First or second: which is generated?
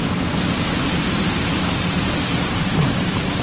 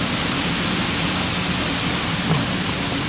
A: first